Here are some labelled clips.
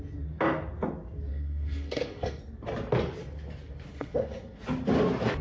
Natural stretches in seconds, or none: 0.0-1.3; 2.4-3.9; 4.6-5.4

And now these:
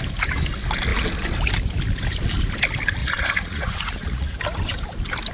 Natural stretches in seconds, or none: 0.0-3.0; 4.4-5.3

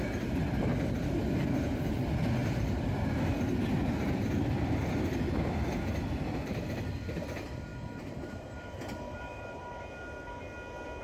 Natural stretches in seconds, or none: 0.0-2.4; 2.9-7.7; 9.8-11.0

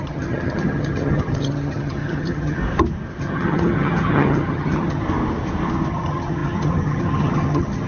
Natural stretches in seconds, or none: 2.6-3.2; 5.0-5.9

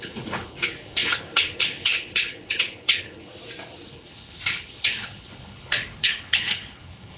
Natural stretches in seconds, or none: 3.3-3.9